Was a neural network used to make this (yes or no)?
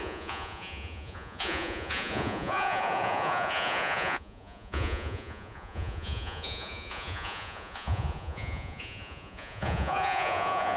yes